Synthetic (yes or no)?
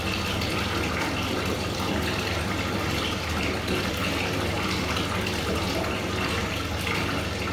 no